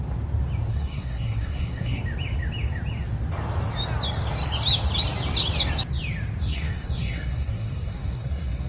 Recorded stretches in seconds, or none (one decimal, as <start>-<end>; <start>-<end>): 0.0-0.7; 2.0-6.4